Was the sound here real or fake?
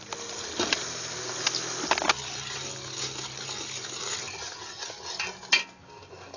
real